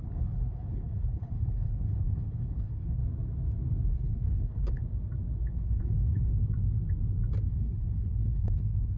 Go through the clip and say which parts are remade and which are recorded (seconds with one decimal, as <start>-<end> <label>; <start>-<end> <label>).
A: 0.0-3.0 remade; 3.0-3.9 recorded; 3.9-4.8 remade; 4.8-5.5 recorded; 5.5-6.3 remade; 6.3-7.5 recorded; 7.5-9.0 remade